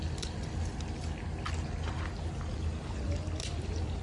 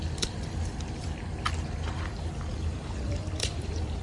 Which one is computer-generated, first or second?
second